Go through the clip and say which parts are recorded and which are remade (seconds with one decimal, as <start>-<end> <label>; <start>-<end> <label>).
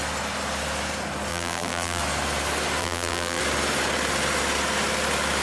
0.0-1.3 recorded; 1.3-2.0 remade; 2.0-2.8 recorded; 2.8-3.4 remade; 3.4-5.4 recorded